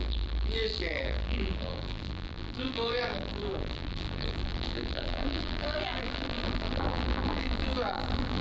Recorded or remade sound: remade